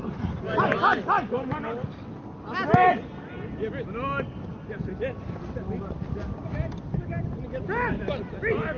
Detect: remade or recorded recorded